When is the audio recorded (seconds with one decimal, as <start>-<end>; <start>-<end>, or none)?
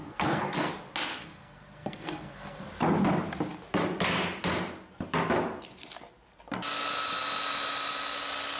0.7-1.1; 2.6-8.6